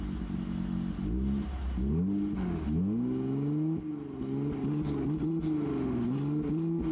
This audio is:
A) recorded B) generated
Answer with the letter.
A